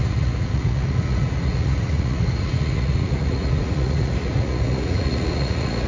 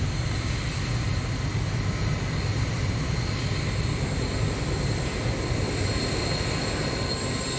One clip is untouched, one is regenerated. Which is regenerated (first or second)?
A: first